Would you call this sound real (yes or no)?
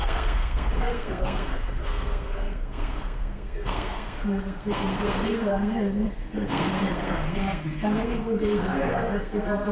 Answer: no